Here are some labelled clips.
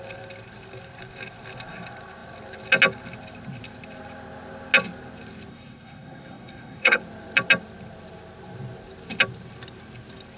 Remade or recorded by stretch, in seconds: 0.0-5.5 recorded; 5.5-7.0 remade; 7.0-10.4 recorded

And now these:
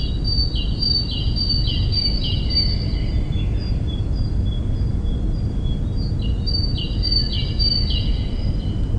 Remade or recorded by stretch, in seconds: 0.0-9.0 recorded